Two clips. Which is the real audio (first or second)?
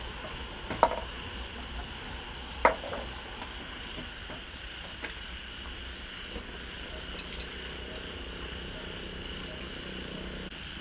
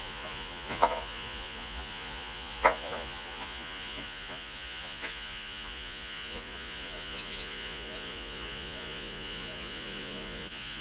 first